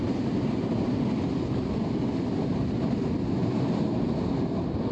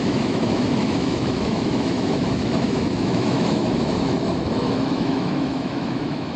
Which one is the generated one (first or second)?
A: second